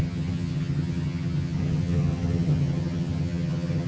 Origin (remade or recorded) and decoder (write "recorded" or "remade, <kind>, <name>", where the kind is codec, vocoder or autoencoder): remade, vocoder, HiFi-GAN